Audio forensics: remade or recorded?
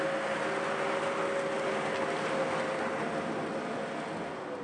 recorded